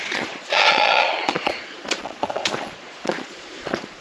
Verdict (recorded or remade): remade